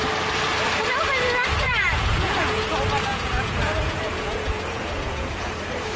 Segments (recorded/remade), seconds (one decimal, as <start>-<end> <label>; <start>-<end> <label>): 0.0-1.6 recorded; 1.6-2.7 remade; 2.7-3.1 recorded; 3.1-5.6 remade; 5.6-6.0 recorded